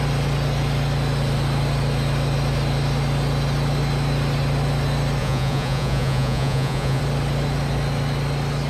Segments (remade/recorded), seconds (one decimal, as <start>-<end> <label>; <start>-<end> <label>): 0.0-5.2 recorded; 5.2-7.0 remade; 7.0-8.7 recorded